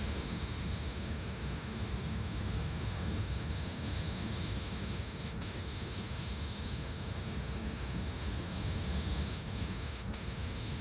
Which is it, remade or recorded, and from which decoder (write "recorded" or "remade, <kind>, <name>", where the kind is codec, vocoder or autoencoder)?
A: remade, autoencoder, DAC-VAE